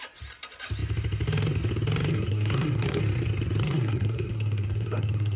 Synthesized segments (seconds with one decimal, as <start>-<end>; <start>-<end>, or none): 2.1-3.0; 3.6-5.4